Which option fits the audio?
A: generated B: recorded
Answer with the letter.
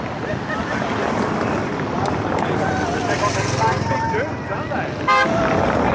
B